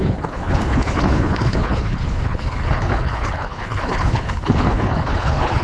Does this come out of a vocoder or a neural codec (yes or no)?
yes